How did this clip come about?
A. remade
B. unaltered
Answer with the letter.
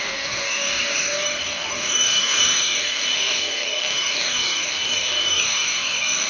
A